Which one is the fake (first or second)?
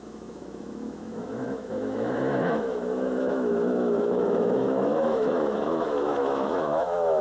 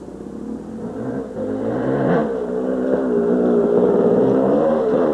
first